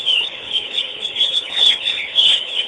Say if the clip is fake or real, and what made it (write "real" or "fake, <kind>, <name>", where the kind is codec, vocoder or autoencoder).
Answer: fake, codec, HILCodec